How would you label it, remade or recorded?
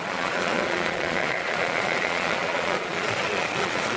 remade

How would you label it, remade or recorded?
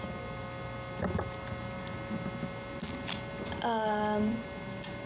recorded